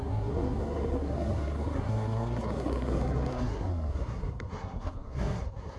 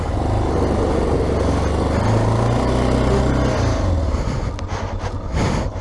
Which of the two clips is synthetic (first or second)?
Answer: first